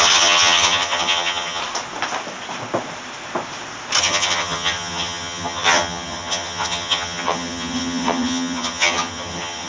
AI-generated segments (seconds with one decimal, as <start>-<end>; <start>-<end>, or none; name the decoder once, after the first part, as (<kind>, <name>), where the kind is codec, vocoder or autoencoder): 0.0-1.6 (vocoder, HiFi-GAN); 4.0-9.7